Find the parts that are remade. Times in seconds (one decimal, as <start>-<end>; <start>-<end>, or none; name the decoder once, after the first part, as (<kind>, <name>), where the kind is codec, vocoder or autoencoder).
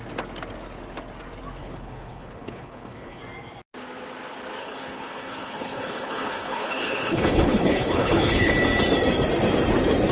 1.6-3.2 (codec, HILCodec); 4.6-8.5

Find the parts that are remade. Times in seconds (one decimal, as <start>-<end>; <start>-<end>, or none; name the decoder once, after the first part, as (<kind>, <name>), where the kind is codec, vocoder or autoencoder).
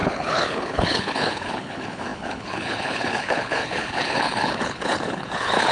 0.0-5.7 (codec, HILCodec)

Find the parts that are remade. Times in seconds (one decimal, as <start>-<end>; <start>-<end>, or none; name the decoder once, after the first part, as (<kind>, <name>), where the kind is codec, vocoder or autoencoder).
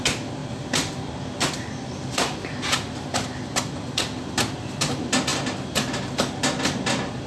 none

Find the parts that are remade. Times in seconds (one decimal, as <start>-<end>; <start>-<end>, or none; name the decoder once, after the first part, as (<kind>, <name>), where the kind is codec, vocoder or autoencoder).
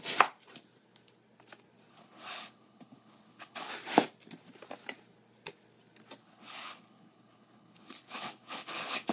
1.9-3.7 (codec, HILCodec); 6.2-9.1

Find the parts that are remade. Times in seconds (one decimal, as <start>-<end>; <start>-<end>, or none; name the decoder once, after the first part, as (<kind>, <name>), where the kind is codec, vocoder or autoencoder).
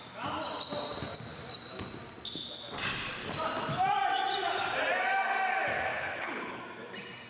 5.9-6.6 (codec, HILCodec)